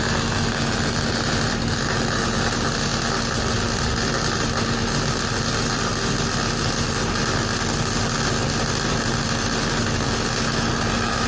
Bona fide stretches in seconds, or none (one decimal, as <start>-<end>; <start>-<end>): 0.0-11.3